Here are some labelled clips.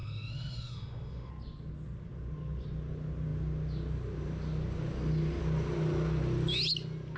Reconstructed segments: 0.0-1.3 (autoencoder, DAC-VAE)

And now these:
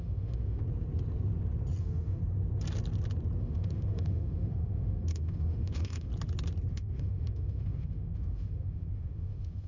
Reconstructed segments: 0.0-0.6 (autoencoder, DAC-VAE); 1.8-2.2; 3.4-6.1; 6.7-9.7

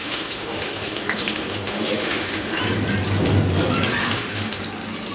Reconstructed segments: 0.0-2.6 (autoencoder, DAC-VAE); 4.0-4.6